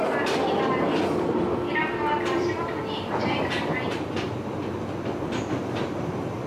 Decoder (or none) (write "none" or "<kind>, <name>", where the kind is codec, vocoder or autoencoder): vocoder, BigVGAN v2